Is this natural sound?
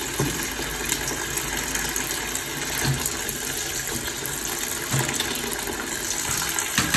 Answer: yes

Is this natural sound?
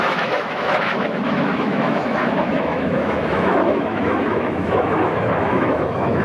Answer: no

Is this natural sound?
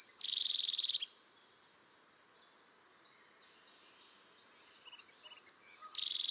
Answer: yes